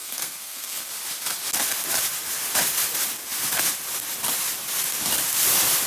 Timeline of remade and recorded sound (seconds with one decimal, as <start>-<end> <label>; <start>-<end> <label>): 0.0-0.9 remade; 0.9-5.9 recorded